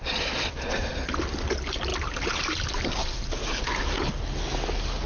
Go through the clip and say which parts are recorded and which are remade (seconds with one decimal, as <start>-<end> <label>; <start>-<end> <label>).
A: 0.0-1.9 recorded; 1.9-3.6 remade; 3.6-5.1 recorded